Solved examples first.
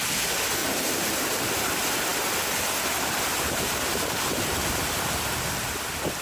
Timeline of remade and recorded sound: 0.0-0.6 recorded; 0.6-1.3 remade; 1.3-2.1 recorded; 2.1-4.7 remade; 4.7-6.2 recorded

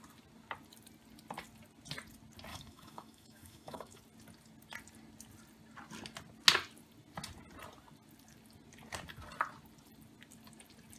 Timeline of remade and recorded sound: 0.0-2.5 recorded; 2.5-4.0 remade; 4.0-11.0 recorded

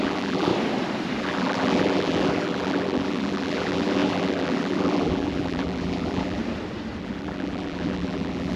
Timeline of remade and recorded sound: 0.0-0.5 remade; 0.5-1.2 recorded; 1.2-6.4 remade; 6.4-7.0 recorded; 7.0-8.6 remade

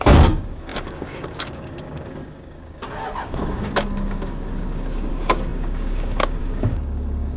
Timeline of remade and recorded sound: 0.0-7.4 remade

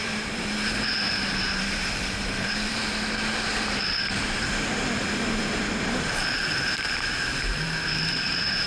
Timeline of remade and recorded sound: 0.0-2.8 remade; 2.8-7.2 recorded; 7.2-8.7 remade